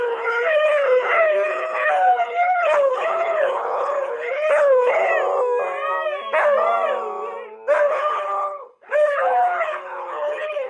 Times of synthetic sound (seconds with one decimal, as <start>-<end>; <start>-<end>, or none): 0.0-5.1; 7.9-10.7